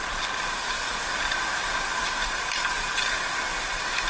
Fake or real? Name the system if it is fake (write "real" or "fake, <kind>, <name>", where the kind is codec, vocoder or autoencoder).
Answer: real